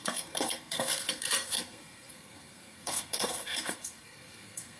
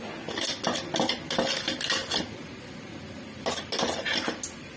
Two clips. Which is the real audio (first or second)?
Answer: second